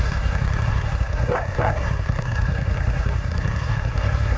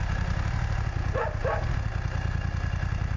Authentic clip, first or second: second